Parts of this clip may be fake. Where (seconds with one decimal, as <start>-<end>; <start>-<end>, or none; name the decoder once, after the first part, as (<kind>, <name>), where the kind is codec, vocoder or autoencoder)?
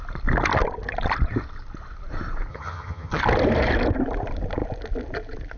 2.5-3.2 (vocoder, HiFi-GAN)